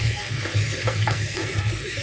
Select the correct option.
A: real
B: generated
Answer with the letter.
B